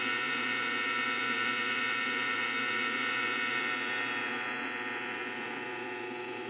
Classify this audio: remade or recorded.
remade